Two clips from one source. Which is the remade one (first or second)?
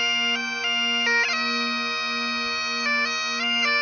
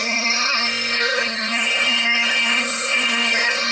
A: second